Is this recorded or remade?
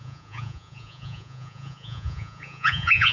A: remade